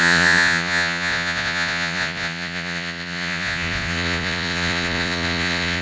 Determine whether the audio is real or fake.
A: fake